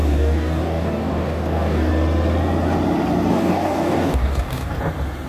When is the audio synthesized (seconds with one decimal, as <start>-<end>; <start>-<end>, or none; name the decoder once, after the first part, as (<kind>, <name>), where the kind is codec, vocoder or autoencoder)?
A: 0.0-1.9 (codec, DAC); 3.3-4.8

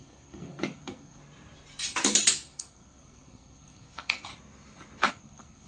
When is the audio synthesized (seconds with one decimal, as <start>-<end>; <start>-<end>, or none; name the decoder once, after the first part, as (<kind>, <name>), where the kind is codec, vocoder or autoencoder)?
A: 0.0-1.2 (codec, SNAC); 2.3-4.3; 5.1-5.7

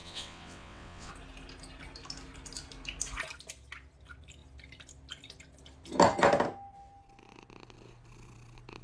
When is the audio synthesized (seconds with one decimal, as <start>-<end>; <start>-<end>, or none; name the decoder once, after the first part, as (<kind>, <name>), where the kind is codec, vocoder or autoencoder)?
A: 0.0-1.1 (vocoder, WaveNeXt)